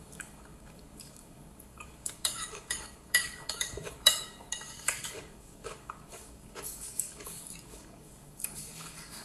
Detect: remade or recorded remade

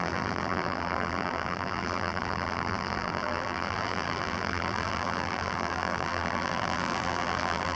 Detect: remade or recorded remade